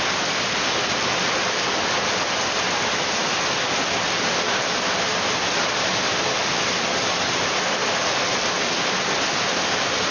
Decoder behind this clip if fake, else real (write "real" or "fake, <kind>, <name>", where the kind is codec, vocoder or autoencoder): real